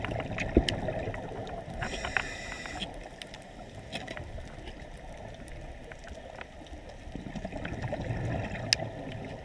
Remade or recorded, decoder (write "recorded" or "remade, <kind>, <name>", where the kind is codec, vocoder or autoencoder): recorded